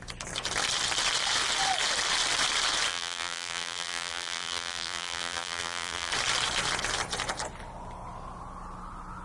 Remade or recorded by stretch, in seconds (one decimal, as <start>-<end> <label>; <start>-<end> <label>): 0.0-2.9 recorded; 2.9-6.1 remade; 6.1-9.2 recorded